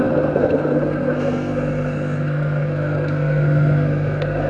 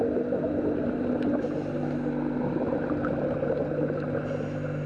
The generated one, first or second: first